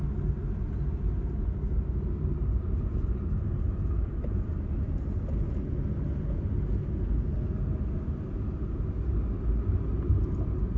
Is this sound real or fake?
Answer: real